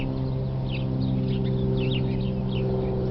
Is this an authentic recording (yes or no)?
yes